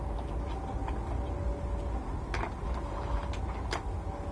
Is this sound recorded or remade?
recorded